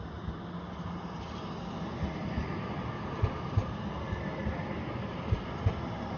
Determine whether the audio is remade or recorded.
recorded